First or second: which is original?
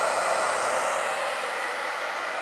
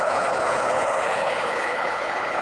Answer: first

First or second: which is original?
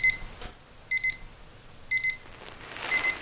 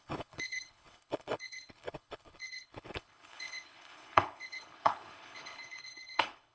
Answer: first